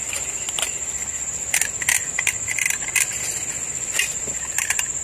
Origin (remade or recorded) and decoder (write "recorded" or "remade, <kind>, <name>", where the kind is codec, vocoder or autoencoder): recorded